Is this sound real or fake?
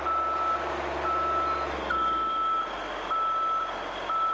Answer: real